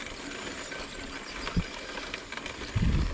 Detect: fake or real real